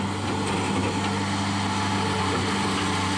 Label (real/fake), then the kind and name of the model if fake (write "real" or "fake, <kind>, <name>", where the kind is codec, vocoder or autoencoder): real